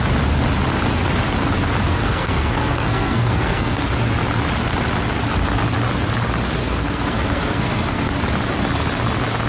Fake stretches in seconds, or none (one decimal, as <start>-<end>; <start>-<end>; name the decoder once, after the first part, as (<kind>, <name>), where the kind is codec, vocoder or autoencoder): 1.9-3.9 (codec, SNAC); 6.6-8.1